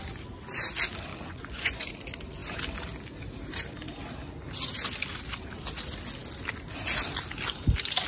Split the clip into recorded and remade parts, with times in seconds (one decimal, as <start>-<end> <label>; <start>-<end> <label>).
0.0-1.1 recorded; 1.1-1.9 remade; 1.9-8.1 recorded